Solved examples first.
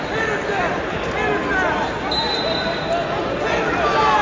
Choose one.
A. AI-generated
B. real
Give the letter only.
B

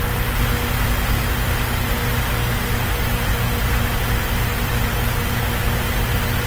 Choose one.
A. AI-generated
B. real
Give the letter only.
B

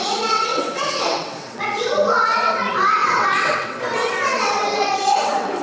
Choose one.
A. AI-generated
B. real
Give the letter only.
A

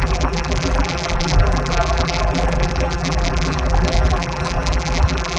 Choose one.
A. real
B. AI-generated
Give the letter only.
B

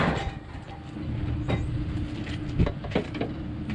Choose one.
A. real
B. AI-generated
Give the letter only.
A